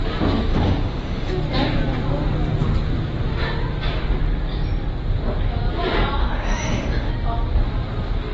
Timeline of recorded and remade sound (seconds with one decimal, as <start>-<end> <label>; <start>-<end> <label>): 0.0-0.5 recorded; 0.5-1.3 remade; 1.3-6.2 recorded; 6.2-7.1 remade; 7.1-8.3 recorded